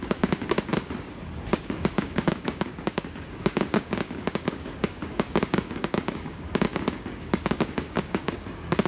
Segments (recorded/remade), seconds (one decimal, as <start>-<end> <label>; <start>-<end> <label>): 0.0-0.7 remade; 0.7-1.6 recorded; 1.6-8.9 remade